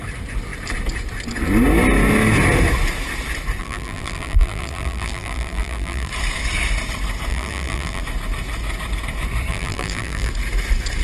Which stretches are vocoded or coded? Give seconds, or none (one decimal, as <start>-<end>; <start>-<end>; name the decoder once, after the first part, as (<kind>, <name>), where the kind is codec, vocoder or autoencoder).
3.6-6.1 (vocoder, BigVGAN v2); 7.3-8.0; 9.5-10.3